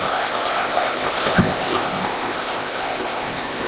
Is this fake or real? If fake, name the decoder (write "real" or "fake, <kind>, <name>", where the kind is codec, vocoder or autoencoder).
fake, codec, ZipCodec